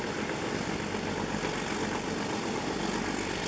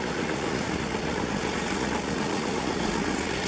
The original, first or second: first